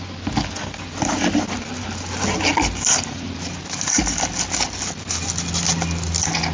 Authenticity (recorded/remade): recorded